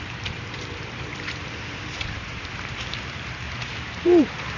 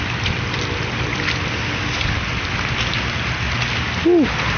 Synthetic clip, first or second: first